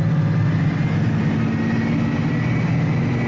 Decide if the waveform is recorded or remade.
recorded